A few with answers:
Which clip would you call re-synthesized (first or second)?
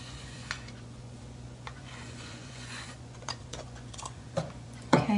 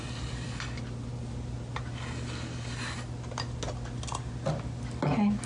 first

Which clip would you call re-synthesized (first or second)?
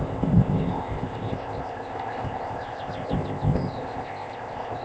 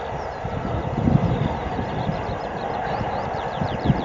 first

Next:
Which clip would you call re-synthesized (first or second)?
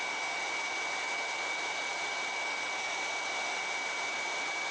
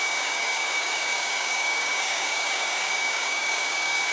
second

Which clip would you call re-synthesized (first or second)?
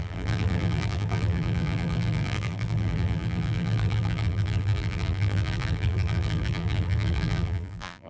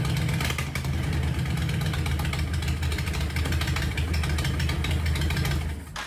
first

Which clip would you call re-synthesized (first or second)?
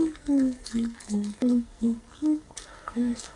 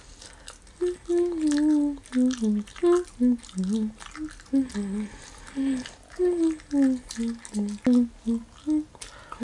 first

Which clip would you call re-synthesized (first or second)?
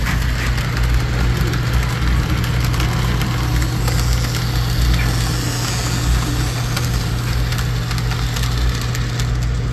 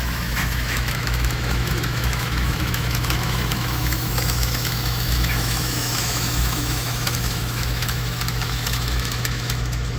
second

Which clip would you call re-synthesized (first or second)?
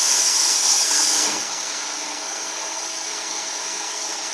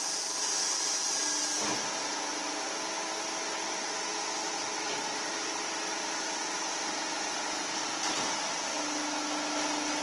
first